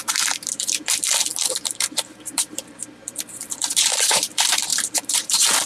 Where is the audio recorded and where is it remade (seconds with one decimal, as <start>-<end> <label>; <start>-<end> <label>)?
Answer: 0.0-5.7 remade